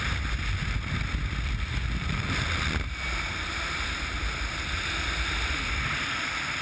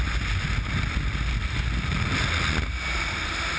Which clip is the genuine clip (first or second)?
second